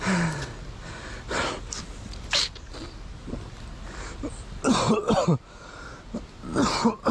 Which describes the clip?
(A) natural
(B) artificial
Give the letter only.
A